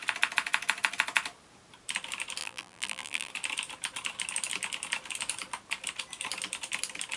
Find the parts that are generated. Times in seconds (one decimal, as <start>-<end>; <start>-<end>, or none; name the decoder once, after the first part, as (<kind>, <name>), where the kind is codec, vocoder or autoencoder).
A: 2.4-3.3 (vocoder, BigVGAN v2)